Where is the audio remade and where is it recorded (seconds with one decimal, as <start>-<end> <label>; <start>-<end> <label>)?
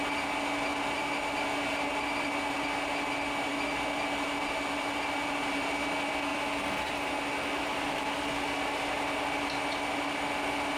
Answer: 0.0-10.8 recorded